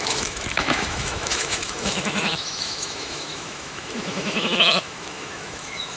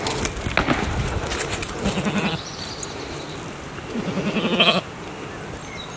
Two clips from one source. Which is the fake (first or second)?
first